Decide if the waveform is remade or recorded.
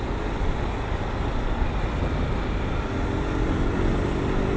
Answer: recorded